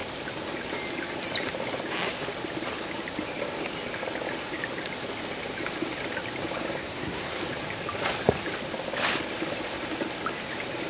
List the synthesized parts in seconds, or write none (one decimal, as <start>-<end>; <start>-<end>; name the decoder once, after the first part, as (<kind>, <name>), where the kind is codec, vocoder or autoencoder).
6.8-7.4 (codec, SNAC)